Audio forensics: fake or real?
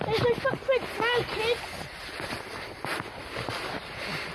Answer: real